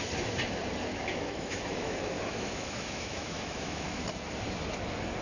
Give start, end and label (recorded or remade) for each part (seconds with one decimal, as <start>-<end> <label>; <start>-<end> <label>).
0.0-0.9 recorded; 0.9-4.0 remade; 4.0-5.2 recorded